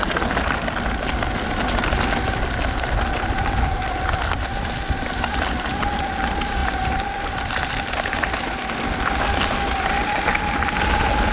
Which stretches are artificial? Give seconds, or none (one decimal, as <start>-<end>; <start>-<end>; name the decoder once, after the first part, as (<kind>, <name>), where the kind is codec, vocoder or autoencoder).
none